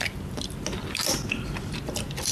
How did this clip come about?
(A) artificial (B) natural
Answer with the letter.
B